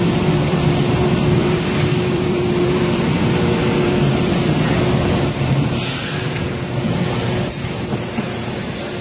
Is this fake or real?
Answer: fake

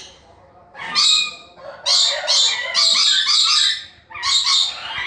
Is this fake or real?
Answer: real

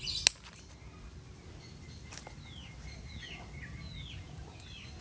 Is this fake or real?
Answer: real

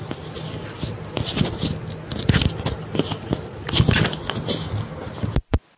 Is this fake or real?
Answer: real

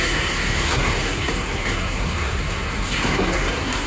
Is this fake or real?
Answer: fake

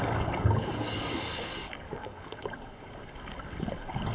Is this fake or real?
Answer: fake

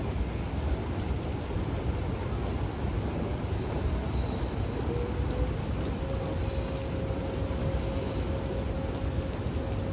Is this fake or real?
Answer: real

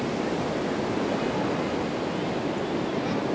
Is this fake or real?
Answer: real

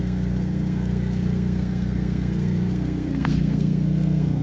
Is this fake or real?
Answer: fake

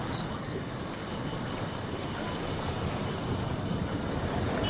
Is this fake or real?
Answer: fake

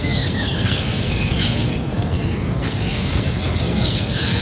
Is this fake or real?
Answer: fake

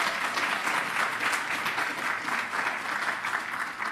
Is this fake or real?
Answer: real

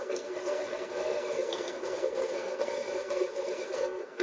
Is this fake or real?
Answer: fake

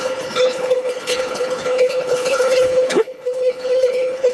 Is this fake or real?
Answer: fake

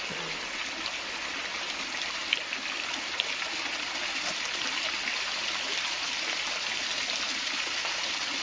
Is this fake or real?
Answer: real